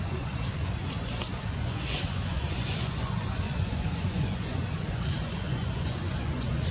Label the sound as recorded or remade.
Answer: remade